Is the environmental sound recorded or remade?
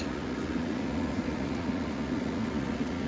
remade